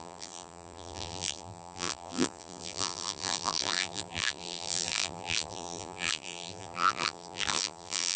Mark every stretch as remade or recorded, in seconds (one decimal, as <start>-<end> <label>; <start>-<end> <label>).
0.0-8.2 remade